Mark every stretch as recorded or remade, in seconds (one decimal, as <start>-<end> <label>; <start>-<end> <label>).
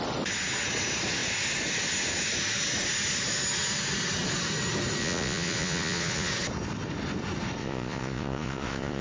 0.0-5.0 recorded; 5.0-6.3 remade; 6.3-7.6 recorded; 7.6-9.0 remade